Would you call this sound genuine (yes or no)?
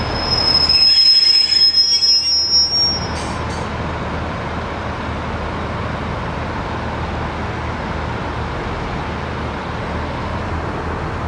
yes